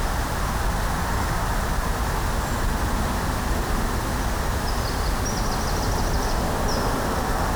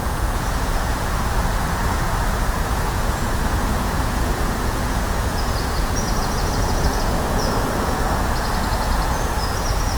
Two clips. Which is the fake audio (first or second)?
second